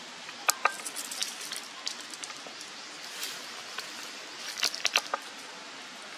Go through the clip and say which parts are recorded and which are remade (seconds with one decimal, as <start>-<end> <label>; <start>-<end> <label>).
0.0-6.2 recorded